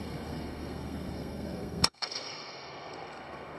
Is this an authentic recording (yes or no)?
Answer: no